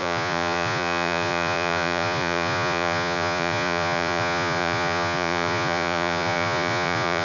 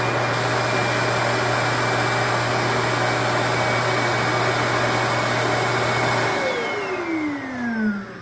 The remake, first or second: first